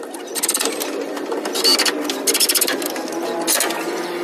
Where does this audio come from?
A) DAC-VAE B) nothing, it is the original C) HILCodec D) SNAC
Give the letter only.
B